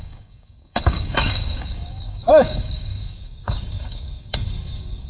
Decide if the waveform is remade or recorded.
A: remade